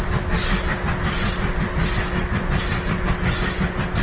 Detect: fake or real real